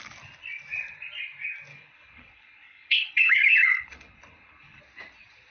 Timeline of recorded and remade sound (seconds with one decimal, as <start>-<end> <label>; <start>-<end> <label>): 0.0-1.7 recorded; 1.7-4.8 remade; 4.8-5.5 recorded